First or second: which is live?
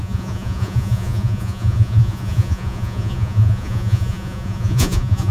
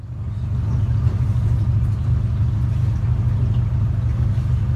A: second